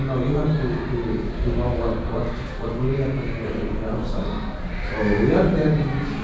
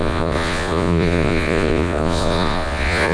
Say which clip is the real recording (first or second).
first